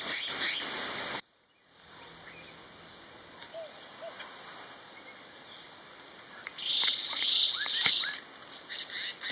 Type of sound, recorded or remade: recorded